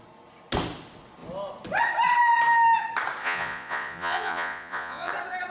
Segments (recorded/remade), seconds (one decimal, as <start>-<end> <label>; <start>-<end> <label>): 0.0-3.2 recorded; 3.2-5.1 remade; 5.1-5.5 recorded